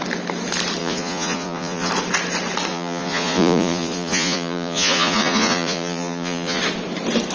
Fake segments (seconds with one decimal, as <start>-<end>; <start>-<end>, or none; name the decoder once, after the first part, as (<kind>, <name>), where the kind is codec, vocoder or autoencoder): 0.8-1.9 (vocoder, Vocos); 2.7-6.6

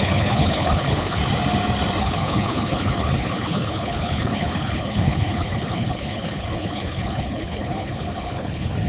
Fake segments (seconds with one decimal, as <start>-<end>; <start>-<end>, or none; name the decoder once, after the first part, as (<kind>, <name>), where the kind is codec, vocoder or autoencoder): 0.0-1.2 (codec, HILCodec); 2.0-8.9

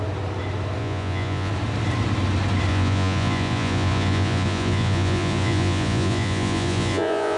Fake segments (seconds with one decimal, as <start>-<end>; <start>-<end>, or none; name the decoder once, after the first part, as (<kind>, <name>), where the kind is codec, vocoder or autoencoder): 0.8-1.5 (vocoder, Vocos); 2.7-7.4

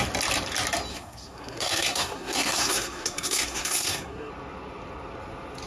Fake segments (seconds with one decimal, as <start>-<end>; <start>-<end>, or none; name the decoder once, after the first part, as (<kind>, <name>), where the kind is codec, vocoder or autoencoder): 0.9-4.3 (codec, SNAC)

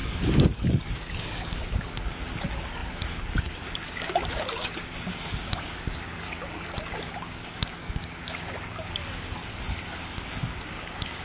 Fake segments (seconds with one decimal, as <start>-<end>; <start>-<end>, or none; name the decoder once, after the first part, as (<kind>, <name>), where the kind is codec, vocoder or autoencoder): 0.0-9.4 (codec, DAC); 9.9-11.2

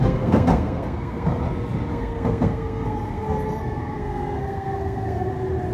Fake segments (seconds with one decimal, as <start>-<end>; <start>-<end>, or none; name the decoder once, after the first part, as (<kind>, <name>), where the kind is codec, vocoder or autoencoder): 0.0-1.4 (codec, SNAC); 1.9-5.3